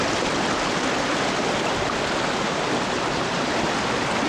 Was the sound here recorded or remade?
recorded